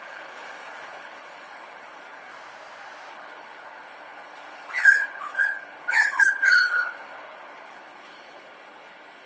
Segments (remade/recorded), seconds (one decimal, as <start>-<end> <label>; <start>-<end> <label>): 0.0-2.3 remade; 2.3-3.1 recorded; 3.1-9.3 remade